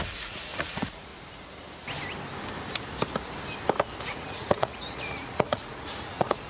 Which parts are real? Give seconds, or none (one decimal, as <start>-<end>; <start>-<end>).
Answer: 1.1-4.0